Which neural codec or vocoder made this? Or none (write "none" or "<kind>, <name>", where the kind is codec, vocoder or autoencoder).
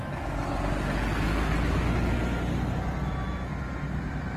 none